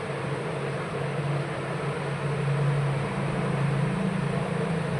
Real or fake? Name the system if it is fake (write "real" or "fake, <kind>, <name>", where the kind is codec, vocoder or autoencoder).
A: real